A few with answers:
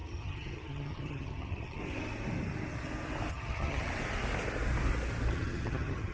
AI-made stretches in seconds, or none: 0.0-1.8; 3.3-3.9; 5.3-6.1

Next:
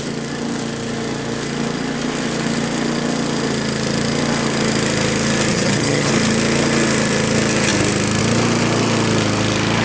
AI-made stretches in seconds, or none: 5.5-6.1

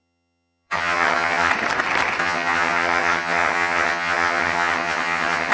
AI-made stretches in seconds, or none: 0.0-1.5; 2.2-5.5

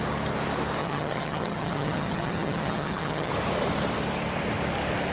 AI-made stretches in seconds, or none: 0.8-3.3